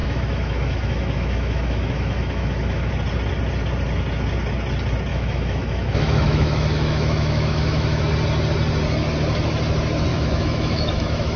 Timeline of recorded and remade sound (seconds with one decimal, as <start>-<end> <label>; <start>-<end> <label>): 0.0-2.9 remade; 2.9-5.1 recorded; 5.1-8.0 remade; 8.0-10.1 recorded; 10.1-11.4 remade